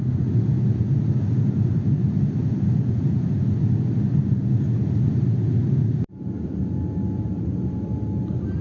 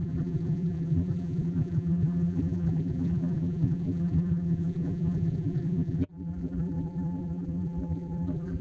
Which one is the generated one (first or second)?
second